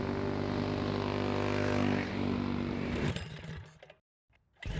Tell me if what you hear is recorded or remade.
recorded